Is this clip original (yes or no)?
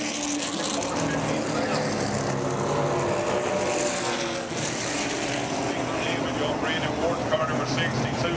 yes